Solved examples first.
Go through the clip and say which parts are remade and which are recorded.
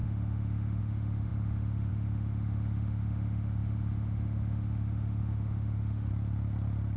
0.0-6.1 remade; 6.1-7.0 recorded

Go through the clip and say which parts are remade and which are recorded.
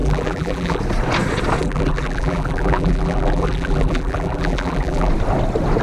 0.0-0.8 remade; 0.8-1.6 recorded; 1.6-5.1 remade; 5.1-5.8 recorded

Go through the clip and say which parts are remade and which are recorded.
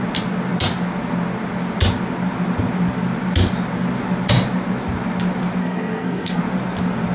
0.0-5.6 recorded; 5.6-6.4 remade; 6.4-7.1 recorded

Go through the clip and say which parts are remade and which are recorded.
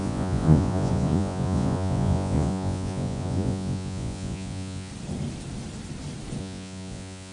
0.0-4.9 remade; 4.9-6.4 recorded; 6.4-7.3 remade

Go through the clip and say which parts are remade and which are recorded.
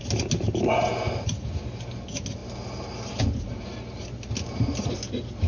0.0-5.5 recorded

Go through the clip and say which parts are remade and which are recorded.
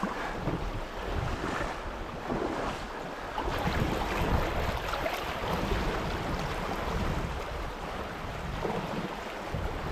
0.0-3.5 recorded; 3.5-4.1 remade; 4.1-9.9 recorded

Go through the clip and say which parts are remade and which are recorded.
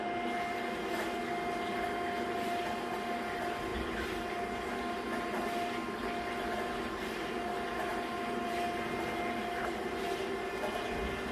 0.0-11.3 recorded